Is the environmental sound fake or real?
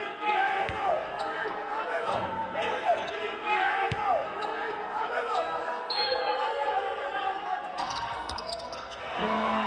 fake